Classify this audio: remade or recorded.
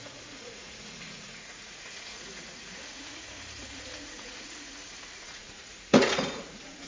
remade